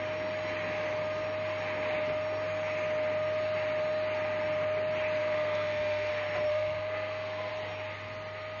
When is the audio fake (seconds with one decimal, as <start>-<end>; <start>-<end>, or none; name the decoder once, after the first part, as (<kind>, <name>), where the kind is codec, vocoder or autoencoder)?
5.2-6.1 (codec, SNAC); 6.5-7.5

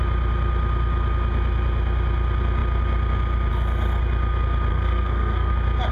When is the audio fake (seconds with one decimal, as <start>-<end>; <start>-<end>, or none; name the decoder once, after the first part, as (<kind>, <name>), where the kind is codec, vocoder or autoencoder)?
4.7-5.5 (codec, SNAC)

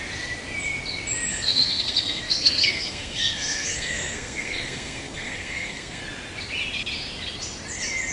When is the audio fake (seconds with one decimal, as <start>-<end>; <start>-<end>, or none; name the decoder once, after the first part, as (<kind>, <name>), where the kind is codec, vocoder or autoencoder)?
1.3-6.0 (codec, SNAC)

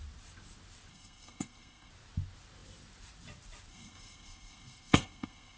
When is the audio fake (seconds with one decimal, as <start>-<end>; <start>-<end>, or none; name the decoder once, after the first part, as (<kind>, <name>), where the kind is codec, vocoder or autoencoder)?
0.9-1.9 (codec, SNAC); 3.7-5.6

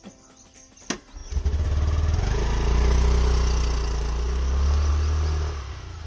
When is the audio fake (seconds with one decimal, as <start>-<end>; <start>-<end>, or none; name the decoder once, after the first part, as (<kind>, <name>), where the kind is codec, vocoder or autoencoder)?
none

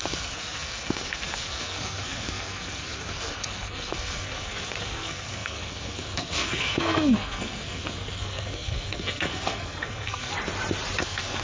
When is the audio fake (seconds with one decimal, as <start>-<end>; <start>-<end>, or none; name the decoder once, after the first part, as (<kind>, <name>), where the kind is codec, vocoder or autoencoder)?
0.0-10.3 (codec, SNAC); 11.0-11.4

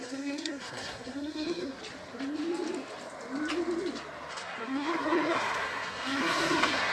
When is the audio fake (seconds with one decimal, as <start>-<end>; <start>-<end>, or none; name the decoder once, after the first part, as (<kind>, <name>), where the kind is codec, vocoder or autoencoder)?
0.0-1.8 (codec, SNAC); 4.3-6.9

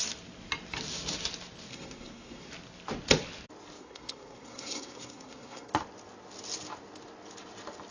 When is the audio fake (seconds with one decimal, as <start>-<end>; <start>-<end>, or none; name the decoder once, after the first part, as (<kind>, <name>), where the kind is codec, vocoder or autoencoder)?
1.7-2.5 (codec, SNAC); 3.8-5.7